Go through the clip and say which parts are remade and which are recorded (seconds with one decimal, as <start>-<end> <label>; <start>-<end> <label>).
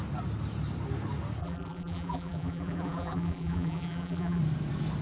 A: 0.0-1.4 recorded; 1.4-4.4 remade; 4.4-5.0 recorded